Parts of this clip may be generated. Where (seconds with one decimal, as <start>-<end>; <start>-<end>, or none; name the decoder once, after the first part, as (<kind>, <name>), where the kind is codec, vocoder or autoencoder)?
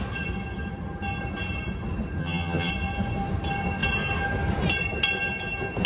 2.2-2.7 (vocoder, HiFi-GAN)